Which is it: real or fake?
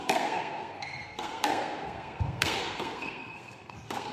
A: fake